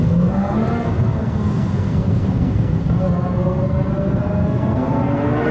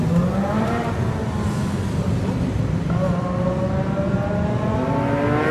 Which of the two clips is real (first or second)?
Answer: second